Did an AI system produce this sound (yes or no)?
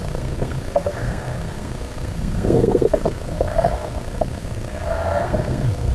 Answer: yes